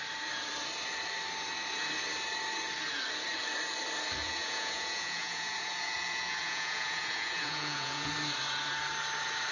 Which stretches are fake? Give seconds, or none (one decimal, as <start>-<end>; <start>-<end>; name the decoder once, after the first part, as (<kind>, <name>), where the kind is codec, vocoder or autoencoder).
4.2-8.1 (vocoder, Vocos)